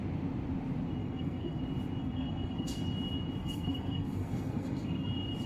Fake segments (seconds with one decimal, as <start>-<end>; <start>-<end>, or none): 1.0-1.6; 2.0-2.8; 3.4-5.1